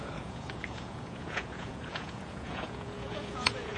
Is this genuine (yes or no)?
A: no